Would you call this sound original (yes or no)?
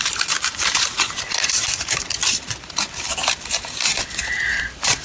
no